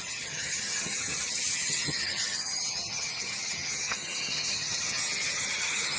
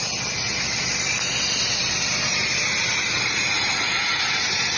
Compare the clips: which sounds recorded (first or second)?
second